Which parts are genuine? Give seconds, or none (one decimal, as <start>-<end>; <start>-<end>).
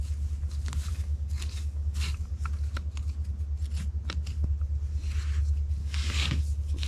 0.0-0.9; 2.3-5.8; 6.4-6.9